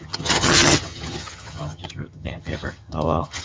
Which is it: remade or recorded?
remade